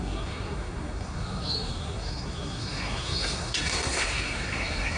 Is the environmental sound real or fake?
fake